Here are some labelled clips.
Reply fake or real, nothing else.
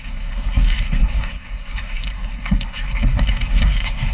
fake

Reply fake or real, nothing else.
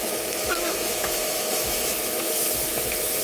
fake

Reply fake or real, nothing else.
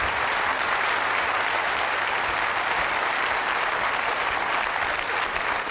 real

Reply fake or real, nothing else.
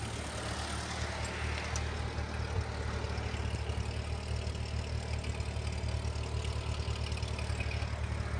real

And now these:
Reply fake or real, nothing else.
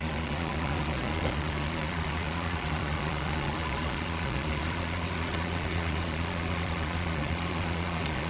fake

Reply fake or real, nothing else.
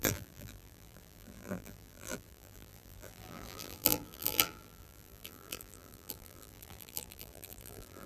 fake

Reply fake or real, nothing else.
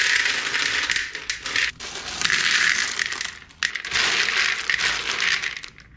real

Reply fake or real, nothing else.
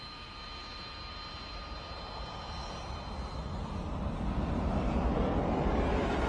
real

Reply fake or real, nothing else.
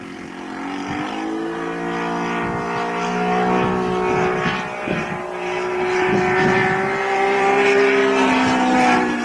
real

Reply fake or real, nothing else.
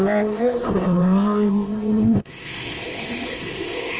fake